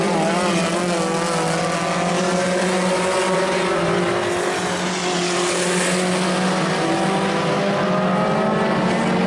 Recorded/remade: recorded